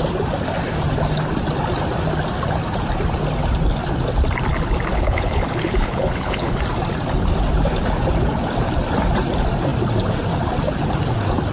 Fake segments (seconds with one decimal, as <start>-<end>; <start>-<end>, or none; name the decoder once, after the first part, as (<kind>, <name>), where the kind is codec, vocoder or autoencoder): 4.9-6.6 (codec, HILCodec)